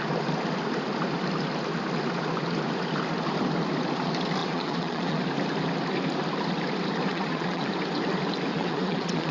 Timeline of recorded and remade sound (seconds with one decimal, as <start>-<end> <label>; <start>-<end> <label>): 0.0-4.4 recorded; 4.4-5.2 remade; 5.2-7.1 recorded; 7.1-7.7 remade; 7.7-8.5 recorded; 8.5-9.3 remade